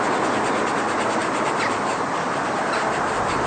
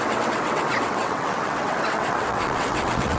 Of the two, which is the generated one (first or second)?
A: second